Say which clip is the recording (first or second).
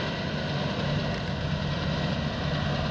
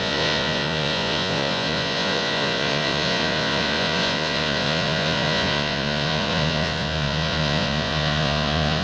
first